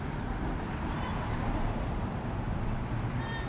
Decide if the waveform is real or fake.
real